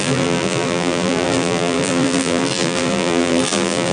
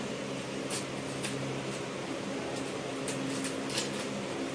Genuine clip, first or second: second